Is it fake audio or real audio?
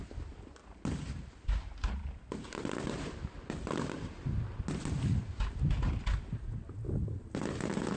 real